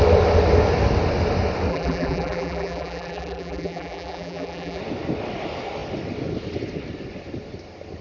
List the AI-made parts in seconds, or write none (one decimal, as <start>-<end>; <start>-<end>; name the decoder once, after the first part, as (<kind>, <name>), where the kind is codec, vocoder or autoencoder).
1.7-4.8 (vocoder, BigVGAN v2)